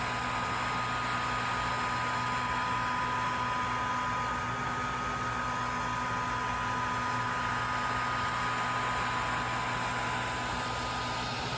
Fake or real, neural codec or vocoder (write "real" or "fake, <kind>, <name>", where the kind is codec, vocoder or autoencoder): real